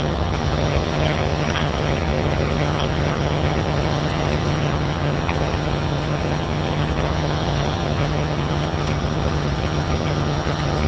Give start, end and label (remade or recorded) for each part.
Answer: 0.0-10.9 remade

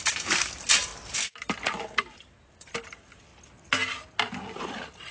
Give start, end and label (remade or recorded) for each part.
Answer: 0.0-0.9 remade; 0.9-2.1 recorded; 2.1-3.3 remade; 3.3-4.6 recorded; 4.6-5.1 remade

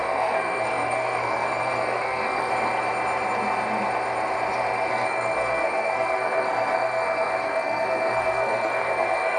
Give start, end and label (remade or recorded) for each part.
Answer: 0.0-2.5 remade; 2.5-4.9 recorded; 4.9-9.4 remade

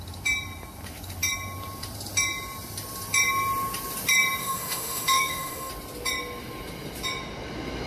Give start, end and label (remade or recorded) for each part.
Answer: 0.0-4.4 recorded; 4.4-5.7 remade; 5.7-7.9 recorded

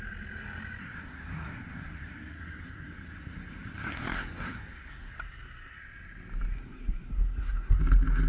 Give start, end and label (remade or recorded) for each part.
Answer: 0.0-0.8 recorded; 0.8-5.1 remade; 5.1-6.5 recorded; 6.5-7.8 remade; 7.8-8.3 recorded